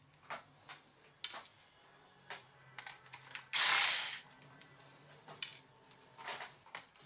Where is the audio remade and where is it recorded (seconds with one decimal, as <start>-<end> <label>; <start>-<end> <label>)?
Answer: 0.0-7.1 recorded